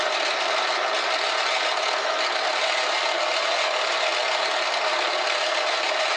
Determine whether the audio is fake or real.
real